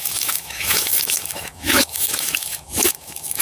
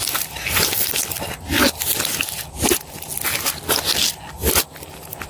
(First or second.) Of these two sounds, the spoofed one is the first